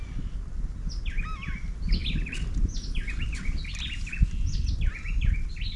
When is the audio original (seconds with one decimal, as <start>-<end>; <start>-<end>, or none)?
0.0-5.8